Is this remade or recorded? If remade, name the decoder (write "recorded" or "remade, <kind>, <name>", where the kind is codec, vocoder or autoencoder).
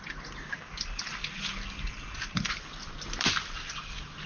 recorded